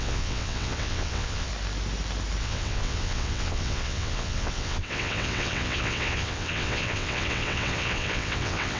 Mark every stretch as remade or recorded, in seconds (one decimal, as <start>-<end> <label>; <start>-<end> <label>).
0.0-1.5 remade; 1.5-2.4 recorded; 2.4-8.8 remade